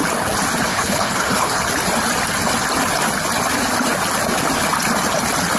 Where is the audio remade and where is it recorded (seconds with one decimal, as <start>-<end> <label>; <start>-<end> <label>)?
0.0-0.7 recorded; 0.7-1.6 remade; 1.6-5.6 recorded

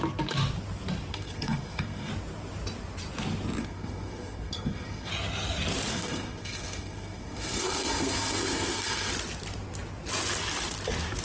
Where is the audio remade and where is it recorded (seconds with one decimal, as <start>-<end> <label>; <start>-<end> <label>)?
0.0-1.1 recorded; 1.1-2.1 remade; 2.1-3.6 recorded; 3.6-5.1 remade; 5.1-5.9 recorded; 5.9-9.1 remade; 9.1-11.2 recorded

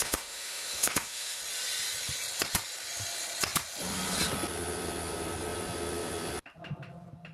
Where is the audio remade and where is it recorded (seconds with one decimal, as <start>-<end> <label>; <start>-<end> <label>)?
0.0-1.4 remade; 1.4-7.3 recorded

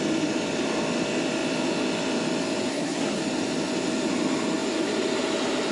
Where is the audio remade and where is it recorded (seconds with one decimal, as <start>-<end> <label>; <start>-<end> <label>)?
0.0-2.7 recorded; 2.7-3.2 remade; 3.2-5.7 recorded

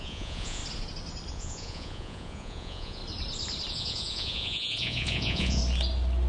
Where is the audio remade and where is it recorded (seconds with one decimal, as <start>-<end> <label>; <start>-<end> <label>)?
0.0-0.6 remade; 0.6-1.3 recorded; 1.3-3.0 remade; 3.0-3.7 recorded; 3.7-5.6 remade; 5.6-6.3 recorded

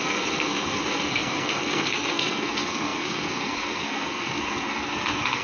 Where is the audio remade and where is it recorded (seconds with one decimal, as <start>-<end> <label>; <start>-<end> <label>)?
0.0-5.4 remade